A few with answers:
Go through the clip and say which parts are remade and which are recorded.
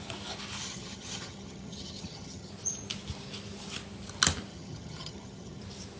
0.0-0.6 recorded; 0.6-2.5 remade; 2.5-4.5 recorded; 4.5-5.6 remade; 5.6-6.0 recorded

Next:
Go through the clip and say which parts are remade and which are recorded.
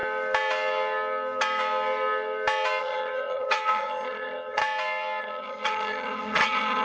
0.0-2.8 recorded; 2.8-4.6 remade; 4.6-5.2 recorded; 5.2-6.8 remade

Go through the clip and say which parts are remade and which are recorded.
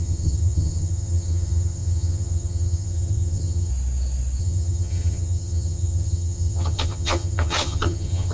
0.0-3.7 remade; 3.7-4.4 recorded; 4.4-8.3 remade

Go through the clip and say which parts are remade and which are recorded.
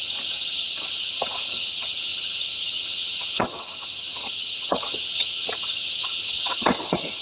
0.0-7.2 remade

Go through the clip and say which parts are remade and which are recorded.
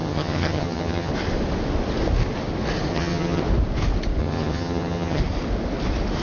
0.0-1.1 remade; 1.1-2.9 recorded; 2.9-3.4 remade; 3.4-4.2 recorded; 4.2-5.2 remade; 5.2-6.2 recorded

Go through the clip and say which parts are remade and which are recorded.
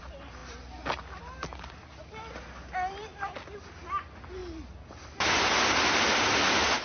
0.0-6.8 recorded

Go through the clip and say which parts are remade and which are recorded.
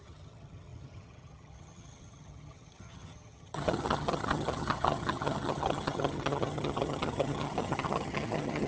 0.0-8.7 remade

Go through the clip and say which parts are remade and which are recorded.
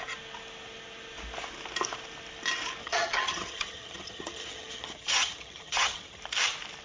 0.0-2.8 recorded; 2.8-6.2 remade; 6.2-6.8 recorded